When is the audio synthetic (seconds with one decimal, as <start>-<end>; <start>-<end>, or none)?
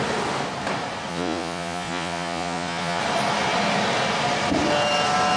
1.1-3.0